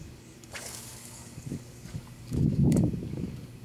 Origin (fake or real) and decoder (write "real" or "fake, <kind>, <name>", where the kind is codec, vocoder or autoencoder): fake, codec, DAC